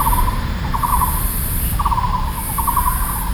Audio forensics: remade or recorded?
recorded